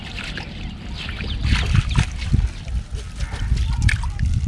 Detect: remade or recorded recorded